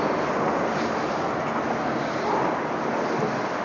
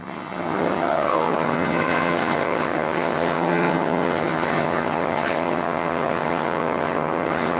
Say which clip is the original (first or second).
first